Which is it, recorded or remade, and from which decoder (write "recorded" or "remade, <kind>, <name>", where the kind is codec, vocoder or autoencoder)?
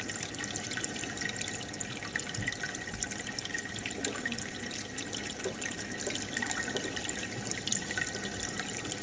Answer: recorded